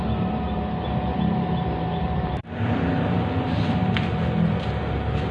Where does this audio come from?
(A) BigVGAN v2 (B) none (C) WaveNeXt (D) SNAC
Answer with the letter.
A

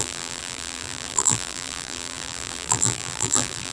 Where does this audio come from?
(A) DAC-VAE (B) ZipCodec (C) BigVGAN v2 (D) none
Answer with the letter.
C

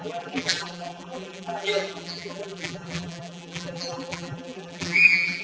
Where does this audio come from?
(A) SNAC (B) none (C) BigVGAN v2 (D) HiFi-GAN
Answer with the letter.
C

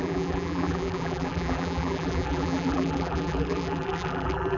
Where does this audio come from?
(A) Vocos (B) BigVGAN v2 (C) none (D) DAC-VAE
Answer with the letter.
B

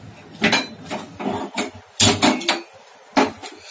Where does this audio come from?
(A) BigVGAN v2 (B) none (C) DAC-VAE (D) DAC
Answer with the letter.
B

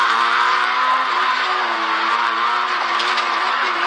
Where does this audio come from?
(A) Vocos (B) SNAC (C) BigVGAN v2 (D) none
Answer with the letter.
C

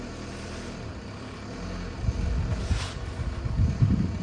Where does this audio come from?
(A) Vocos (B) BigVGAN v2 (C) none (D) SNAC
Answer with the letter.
B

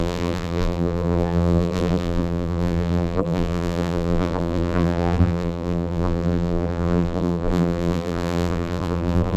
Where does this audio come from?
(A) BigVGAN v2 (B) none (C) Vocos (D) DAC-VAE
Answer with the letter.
A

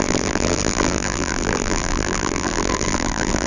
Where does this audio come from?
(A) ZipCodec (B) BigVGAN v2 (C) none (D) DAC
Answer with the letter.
B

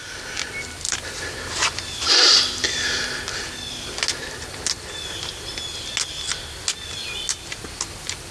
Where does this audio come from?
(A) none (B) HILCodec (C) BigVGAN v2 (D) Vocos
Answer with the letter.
A